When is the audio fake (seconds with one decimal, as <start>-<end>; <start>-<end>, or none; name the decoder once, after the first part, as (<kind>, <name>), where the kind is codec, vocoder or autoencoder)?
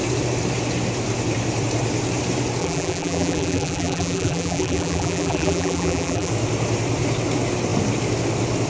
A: 2.6-6.3 (vocoder, BigVGAN v2)